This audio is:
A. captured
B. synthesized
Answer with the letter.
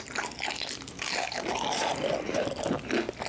A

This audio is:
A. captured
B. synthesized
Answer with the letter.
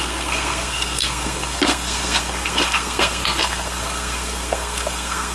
B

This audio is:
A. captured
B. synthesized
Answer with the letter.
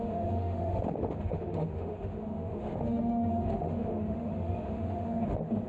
B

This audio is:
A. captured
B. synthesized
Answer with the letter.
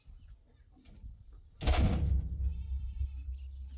A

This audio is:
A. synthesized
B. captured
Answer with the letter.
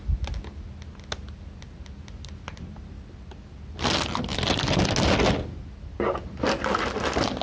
B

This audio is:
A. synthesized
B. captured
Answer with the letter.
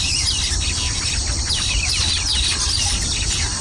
B